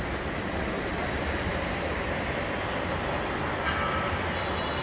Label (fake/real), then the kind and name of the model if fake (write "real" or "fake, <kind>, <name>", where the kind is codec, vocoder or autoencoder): real